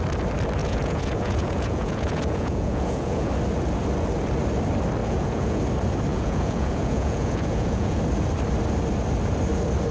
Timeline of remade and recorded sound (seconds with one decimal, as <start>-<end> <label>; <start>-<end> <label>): 0.0-0.6 recorded; 0.6-3.3 remade; 3.3-5.0 recorded; 5.0-5.6 remade; 5.6-6.1 recorded; 6.1-8.0 remade; 8.0-9.9 recorded